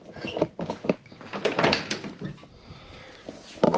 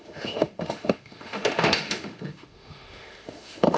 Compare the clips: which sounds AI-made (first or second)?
second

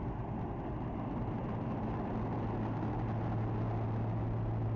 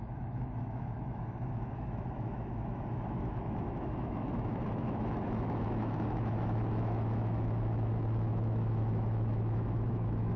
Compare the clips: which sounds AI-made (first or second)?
second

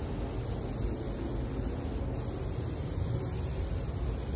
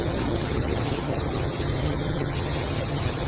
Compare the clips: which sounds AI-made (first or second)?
second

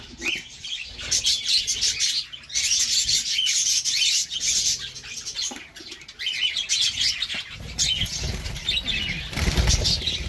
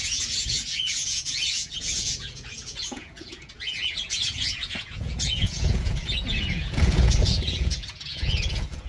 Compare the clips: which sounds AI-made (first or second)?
second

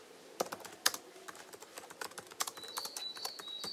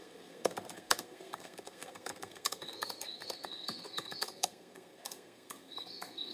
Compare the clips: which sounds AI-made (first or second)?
second